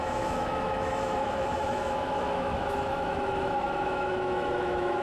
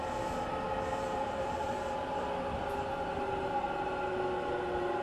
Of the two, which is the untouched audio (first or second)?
second